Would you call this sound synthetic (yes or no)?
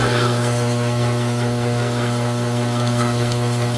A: yes